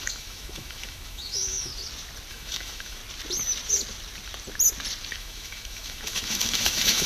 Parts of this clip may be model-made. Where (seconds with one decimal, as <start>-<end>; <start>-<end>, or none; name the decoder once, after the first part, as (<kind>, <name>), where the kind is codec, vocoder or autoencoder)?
0.0-1.7 (autoencoder, DAC-VAE); 2.3-3.0; 5.1-7.1